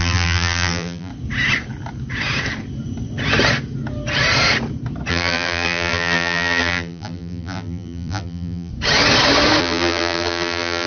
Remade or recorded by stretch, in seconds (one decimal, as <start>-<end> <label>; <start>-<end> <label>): 0.0-1.1 remade; 1.1-5.1 recorded; 5.1-8.7 remade; 8.7-9.6 recorded; 9.6-10.9 remade